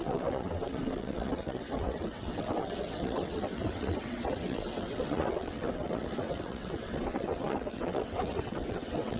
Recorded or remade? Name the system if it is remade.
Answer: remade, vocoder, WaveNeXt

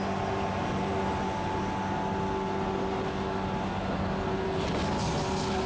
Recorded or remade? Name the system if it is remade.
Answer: recorded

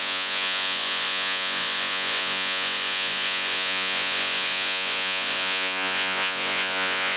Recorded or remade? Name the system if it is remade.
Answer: remade, vocoder, Vocos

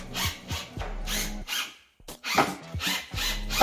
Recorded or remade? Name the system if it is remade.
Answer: recorded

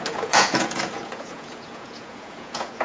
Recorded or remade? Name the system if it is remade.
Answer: remade, vocoder, Vocos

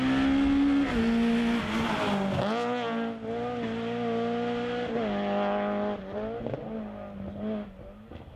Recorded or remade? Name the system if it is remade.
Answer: recorded